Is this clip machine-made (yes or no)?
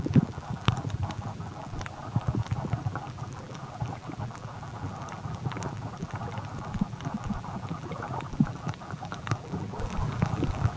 yes